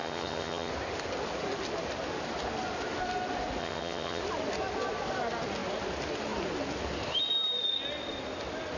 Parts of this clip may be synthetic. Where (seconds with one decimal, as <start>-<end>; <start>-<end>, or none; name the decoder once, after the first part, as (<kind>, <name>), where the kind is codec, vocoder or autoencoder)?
0.0-0.7 (vocoder, HiFi-GAN); 3.6-4.2